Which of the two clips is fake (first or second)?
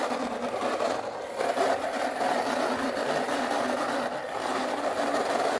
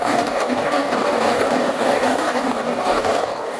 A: second